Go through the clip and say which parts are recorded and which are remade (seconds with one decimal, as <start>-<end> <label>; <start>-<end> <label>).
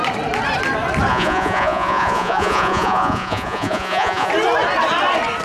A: 0.0-1.1 recorded; 1.1-4.3 remade; 4.3-5.4 recorded